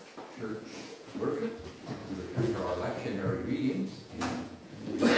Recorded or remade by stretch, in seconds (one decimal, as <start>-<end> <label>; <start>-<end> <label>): 0.0-0.5 recorded; 0.5-1.5 remade; 1.5-2.0 recorded; 2.0-5.2 remade